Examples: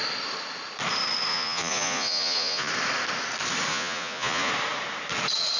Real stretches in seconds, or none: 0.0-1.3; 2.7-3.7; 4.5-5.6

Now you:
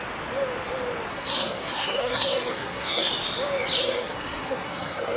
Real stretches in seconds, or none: 0.0-1.1; 3.1-3.8

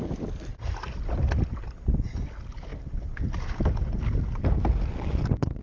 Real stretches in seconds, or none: 0.0-5.6

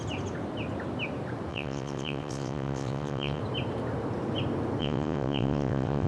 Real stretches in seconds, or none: 0.0-1.5; 3.4-4.8

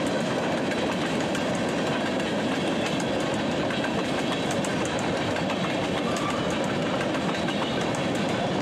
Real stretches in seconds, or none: 1.3-3.5

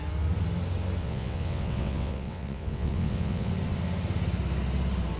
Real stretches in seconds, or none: 0.0-1.0; 3.5-5.2